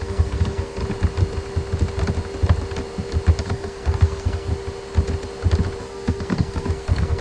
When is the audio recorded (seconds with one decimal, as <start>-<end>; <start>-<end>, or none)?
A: 0.8-3.4; 4.5-5.8

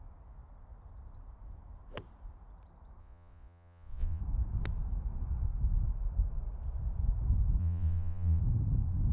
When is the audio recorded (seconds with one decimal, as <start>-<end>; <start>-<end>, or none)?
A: 0.0-3.0; 4.2-7.6; 8.4-9.1

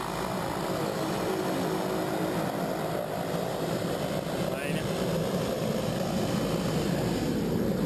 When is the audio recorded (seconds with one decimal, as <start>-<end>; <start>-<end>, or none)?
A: 0.0-3.5; 4.0-7.9

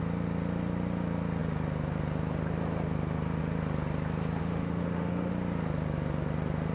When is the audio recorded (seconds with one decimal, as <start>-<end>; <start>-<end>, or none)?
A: 0.0-4.4; 5.3-6.7

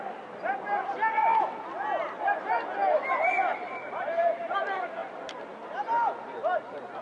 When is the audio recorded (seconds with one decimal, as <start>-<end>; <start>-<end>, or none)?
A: 0.0-7.0